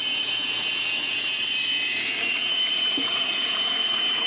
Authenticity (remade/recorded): remade